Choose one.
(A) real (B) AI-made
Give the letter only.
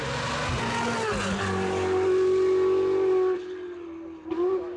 A